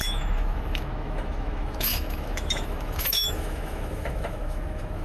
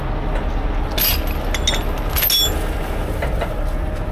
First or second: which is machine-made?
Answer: first